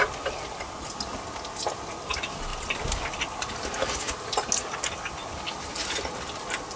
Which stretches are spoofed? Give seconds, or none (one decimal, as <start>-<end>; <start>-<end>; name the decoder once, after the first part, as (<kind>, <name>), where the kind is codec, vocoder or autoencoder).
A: none